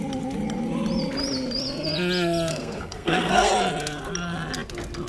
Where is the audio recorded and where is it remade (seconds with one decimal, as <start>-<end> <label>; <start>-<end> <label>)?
0.0-2.5 recorded; 2.5-3.5 remade; 3.5-5.1 recorded